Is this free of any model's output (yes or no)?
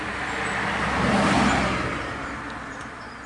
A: yes